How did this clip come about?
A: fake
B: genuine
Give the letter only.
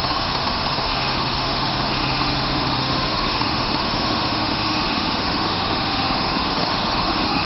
A